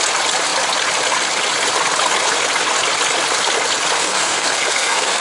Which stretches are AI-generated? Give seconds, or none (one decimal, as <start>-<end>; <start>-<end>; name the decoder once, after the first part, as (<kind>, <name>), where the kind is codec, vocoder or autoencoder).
4.0-5.2 (codec, SNAC)